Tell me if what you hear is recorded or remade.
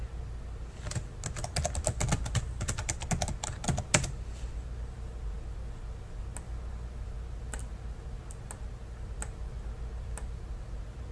recorded